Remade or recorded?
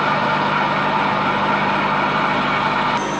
recorded